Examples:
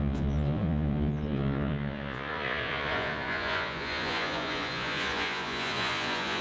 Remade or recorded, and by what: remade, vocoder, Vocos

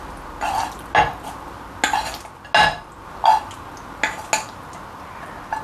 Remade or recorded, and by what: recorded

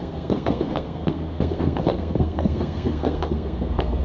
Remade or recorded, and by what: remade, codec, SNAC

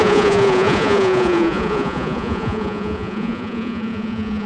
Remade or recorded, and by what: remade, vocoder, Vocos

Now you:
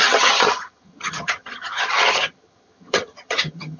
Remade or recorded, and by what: remade, vocoder, HiFi-GAN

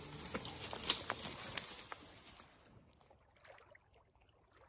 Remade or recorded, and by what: recorded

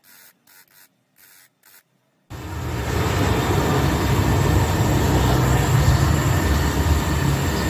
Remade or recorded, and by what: recorded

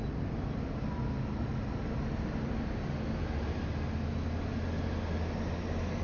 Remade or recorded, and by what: recorded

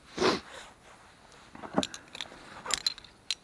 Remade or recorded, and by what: recorded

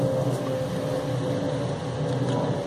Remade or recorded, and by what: recorded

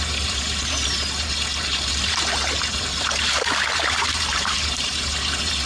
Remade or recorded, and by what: remade, vocoder, BigVGAN v2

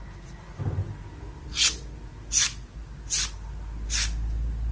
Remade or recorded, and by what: recorded